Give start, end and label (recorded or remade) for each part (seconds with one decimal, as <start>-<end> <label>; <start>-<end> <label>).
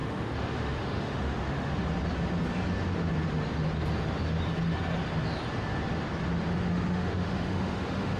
0.0-1.8 remade; 1.8-6.7 recorded; 6.7-8.2 remade